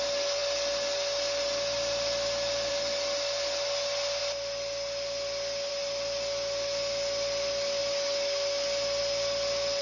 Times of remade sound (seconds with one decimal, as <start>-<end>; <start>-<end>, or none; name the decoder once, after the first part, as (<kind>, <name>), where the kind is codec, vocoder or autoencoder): none

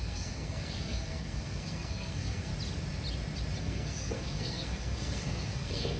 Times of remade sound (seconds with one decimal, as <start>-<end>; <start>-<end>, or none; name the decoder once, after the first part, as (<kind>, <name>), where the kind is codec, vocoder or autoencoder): 0.0-2.5 (codec, SNAC); 3.6-6.0